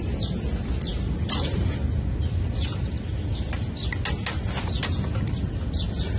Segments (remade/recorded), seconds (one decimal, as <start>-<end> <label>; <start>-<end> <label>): 0.0-6.2 recorded